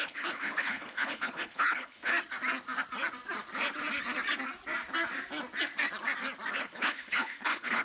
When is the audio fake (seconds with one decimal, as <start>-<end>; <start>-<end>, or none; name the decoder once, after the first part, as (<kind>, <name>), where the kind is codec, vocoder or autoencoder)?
0.0-2.1 (codec, HILCodec); 6.5-7.8

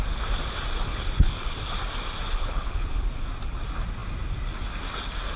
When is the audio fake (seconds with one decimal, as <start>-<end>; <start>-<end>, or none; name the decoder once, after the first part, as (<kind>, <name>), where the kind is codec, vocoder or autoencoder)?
0.9-1.5 (codec, HILCodec); 2.3-3.1

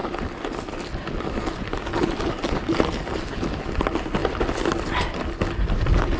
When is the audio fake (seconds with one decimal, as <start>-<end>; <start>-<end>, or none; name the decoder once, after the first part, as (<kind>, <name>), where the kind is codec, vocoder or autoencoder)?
none

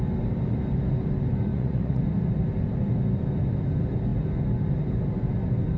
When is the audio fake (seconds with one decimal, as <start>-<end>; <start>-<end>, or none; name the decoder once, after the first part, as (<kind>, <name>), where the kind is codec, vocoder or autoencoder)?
1.5-2.0 (vocoder, Vocos)

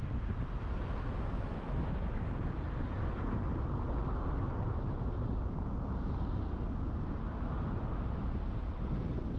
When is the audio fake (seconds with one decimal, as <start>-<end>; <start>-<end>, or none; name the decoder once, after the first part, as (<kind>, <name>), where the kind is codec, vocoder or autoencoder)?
1.5-2.2 (autoencoder, DAC-VAE)

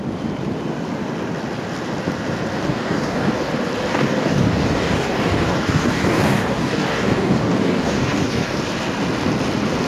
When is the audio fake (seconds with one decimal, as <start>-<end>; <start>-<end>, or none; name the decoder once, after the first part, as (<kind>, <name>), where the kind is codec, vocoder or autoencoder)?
2.7-3.5 (codec, DAC); 3.9-8.6

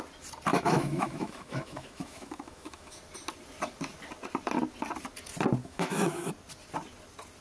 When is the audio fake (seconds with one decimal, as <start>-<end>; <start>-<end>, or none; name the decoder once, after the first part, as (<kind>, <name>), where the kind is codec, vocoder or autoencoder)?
0.5-3.0 (autoencoder, DAC-VAE); 5.6-6.3

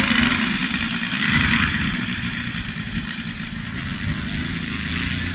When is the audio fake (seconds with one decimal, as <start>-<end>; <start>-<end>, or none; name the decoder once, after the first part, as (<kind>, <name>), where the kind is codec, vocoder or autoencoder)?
0.6-3.8 (vocoder, BigVGAN v2)